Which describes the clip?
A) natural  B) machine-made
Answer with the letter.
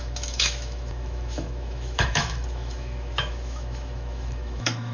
B